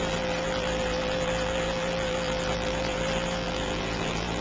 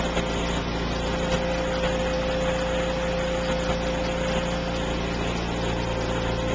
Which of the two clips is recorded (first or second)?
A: second